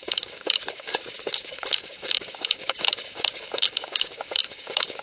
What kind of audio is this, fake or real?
fake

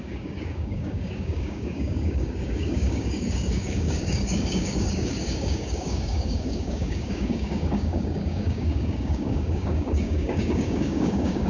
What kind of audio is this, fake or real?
fake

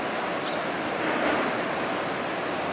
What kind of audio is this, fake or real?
real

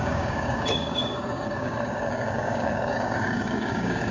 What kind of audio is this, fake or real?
fake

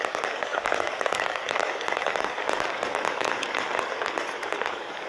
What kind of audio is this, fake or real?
fake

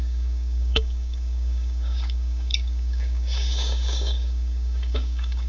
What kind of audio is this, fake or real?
fake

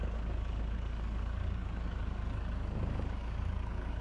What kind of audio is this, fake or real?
fake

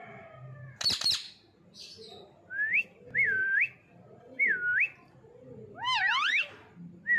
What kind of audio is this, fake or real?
real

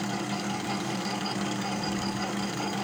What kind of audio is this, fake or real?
fake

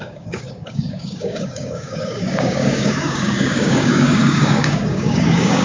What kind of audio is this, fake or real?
fake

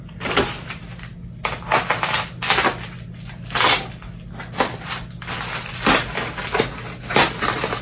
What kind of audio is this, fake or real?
real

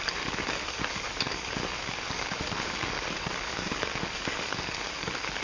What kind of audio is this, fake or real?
fake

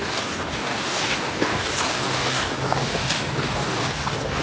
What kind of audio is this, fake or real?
fake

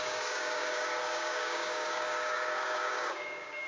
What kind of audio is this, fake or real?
fake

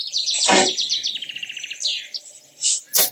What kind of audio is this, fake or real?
real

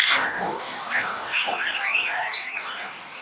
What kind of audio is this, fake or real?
fake